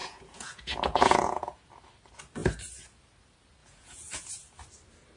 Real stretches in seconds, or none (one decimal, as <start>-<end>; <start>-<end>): 1.6-3.6; 4.3-5.2